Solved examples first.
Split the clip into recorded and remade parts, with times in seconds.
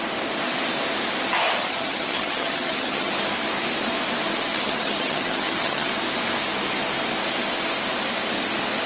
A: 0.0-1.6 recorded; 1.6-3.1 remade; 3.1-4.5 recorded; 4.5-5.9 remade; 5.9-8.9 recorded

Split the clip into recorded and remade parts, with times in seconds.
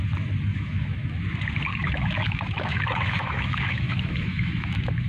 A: 0.0-0.5 recorded; 0.5-1.2 remade; 1.2-1.7 recorded; 1.7-5.1 remade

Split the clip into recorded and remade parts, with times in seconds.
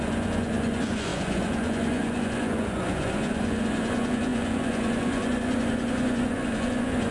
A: 0.0-7.1 remade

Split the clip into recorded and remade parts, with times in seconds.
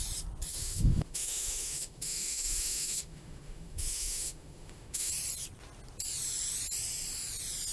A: 0.0-0.5 recorded; 0.5-5.1 remade; 5.1-7.7 recorded